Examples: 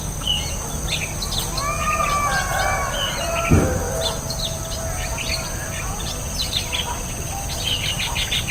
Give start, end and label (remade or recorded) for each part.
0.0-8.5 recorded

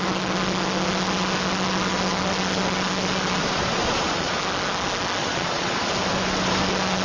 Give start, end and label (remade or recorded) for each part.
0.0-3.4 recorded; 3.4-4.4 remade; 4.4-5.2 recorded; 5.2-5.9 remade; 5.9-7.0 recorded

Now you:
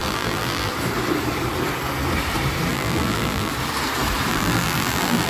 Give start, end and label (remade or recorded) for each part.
0.0-0.7 remade; 0.7-2.7 recorded; 2.7-3.5 remade; 3.5-4.3 recorded; 4.3-5.3 remade

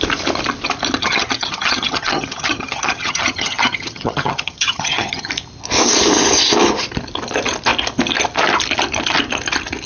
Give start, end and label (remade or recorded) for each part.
0.0-1.0 recorded; 1.0-5.3 remade; 5.3-9.9 recorded

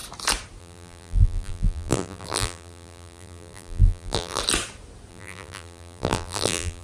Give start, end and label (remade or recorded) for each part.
0.0-0.6 recorded; 0.6-4.4 remade; 4.4-5.1 recorded; 5.1-6.8 remade

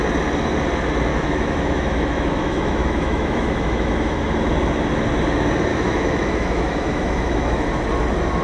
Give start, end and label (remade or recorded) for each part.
0.0-1.1 recorded; 1.1-4.2 remade; 4.2-5.7 recorded; 5.7-7.7 remade; 7.7-8.4 recorded